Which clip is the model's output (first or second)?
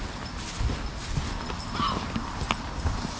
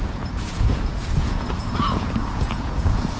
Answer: second